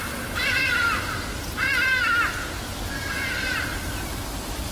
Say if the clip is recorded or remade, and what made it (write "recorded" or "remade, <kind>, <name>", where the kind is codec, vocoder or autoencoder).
recorded